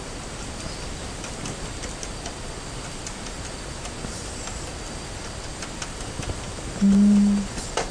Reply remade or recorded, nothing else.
recorded